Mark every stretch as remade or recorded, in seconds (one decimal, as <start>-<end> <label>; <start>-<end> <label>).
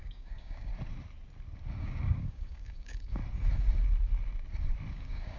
0.0-0.7 remade; 0.7-1.8 recorded; 1.8-3.2 remade; 3.2-4.9 recorded; 4.9-5.4 remade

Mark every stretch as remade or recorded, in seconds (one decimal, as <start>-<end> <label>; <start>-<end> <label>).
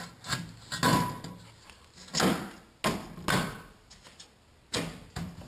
0.0-5.5 recorded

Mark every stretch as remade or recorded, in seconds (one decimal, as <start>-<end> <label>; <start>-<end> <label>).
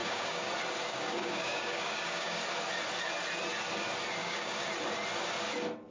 0.0-0.5 remade; 0.5-0.9 recorded; 0.9-2.4 remade; 2.4-4.2 recorded; 4.2-4.7 remade; 4.7-5.9 recorded